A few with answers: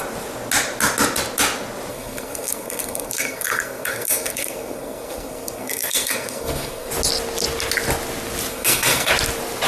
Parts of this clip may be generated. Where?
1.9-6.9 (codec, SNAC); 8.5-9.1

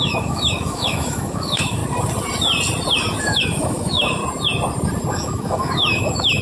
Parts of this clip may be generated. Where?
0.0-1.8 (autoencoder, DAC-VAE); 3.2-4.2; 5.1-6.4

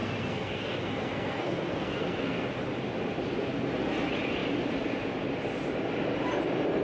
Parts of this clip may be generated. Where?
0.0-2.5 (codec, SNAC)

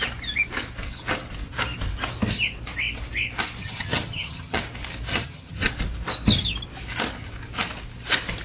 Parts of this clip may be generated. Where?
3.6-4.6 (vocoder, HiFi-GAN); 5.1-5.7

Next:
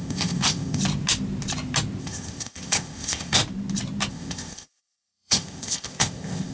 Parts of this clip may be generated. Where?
0.0-0.8 (codec, ZipCodec); 2.0-3.4; 4.1-6.5

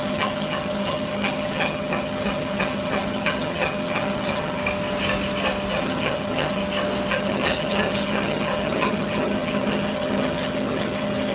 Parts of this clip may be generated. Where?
0.0-4.6 (vocoder, HiFi-GAN); 5.7-6.6; 7.1-11.3